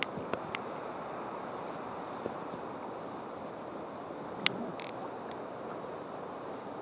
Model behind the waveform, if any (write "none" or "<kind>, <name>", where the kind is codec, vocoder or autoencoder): none